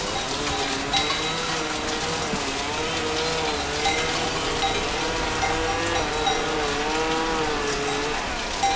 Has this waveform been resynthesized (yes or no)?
no